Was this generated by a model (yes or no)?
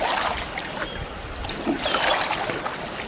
no